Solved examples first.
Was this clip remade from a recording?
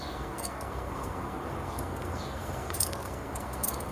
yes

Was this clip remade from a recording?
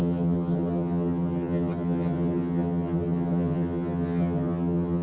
yes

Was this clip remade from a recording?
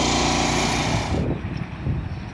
no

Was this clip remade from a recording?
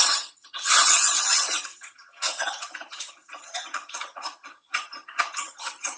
yes